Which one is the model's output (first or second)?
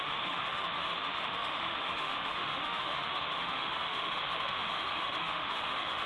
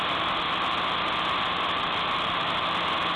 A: first